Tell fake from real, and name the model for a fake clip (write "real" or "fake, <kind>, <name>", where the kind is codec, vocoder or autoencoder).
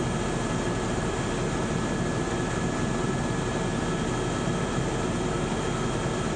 real